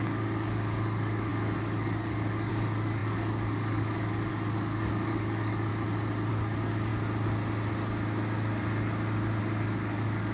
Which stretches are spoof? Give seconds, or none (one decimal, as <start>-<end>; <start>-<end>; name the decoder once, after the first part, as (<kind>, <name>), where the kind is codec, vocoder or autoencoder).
0.0-5.7 (codec, DAC); 6.3-6.9; 9.4-10.3